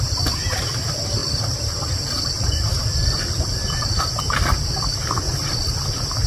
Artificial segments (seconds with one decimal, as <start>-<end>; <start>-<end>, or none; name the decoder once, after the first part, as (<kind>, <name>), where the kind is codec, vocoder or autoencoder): 1.2-4.2 (vocoder, BigVGAN v2)